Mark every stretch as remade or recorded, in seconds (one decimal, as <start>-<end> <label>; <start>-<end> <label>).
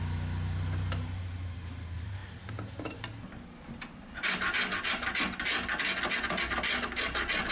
0.0-7.5 recorded